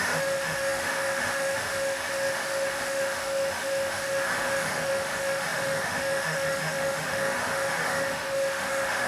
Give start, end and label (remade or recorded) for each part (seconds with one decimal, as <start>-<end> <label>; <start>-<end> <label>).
0.0-9.1 remade